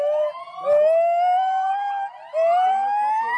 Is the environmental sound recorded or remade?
recorded